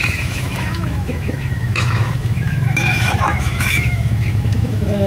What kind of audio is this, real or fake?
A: fake